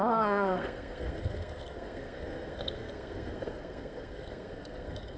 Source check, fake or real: fake